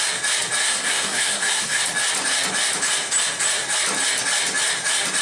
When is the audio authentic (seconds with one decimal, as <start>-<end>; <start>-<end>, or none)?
0.0-0.6; 1.8-5.2